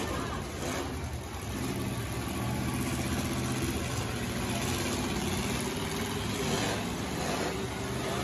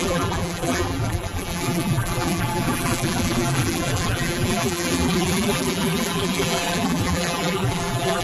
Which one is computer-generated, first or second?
second